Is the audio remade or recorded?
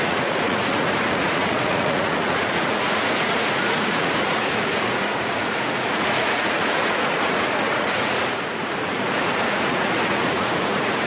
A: remade